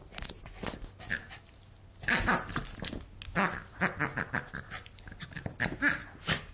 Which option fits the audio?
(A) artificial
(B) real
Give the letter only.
B